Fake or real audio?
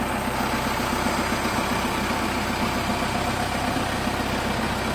real